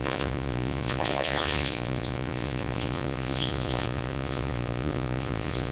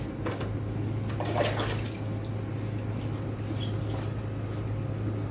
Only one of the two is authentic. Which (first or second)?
second